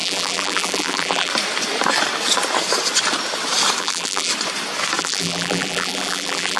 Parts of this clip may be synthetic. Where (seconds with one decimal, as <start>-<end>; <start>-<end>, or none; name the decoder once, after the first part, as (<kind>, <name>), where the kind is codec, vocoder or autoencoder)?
0.0-1.3 (vocoder, BigVGAN v2); 3.8-4.3; 5.0-6.6